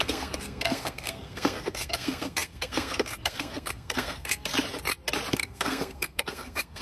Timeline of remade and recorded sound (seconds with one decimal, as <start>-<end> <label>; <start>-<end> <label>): 0.0-4.5 remade; 4.5-5.3 recorded; 5.3-6.8 remade